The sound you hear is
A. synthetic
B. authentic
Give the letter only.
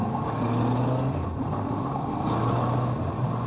B